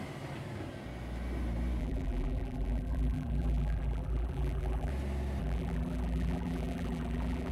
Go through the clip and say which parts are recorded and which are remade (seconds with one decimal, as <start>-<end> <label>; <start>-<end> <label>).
0.0-1.8 recorded; 1.8-4.9 remade; 4.9-5.4 recorded; 5.4-7.5 remade